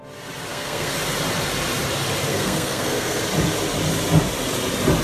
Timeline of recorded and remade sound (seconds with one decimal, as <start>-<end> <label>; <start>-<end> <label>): 0.0-0.5 recorded; 0.5-1.0 remade; 1.0-2.3 recorded; 2.3-3.2 remade; 3.2-5.0 recorded